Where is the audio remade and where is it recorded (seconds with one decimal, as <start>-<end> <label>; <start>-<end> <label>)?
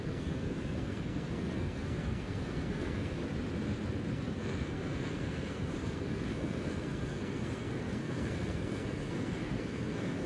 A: 0.0-3.2 remade; 3.2-4.1 recorded; 4.1-10.3 remade